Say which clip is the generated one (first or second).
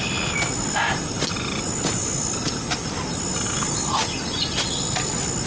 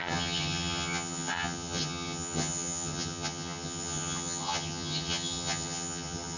second